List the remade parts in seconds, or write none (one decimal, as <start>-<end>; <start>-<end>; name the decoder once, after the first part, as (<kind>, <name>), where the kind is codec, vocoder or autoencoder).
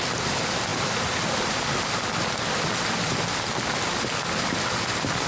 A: 0.0-5.3 (vocoder, BigVGAN v2)